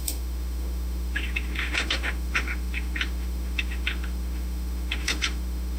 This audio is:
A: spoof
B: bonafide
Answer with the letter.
A